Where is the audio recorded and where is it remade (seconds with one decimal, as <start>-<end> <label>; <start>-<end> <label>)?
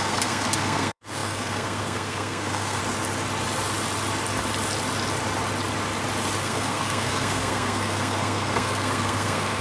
0.0-2.8 remade; 2.8-6.4 recorded; 6.4-9.6 remade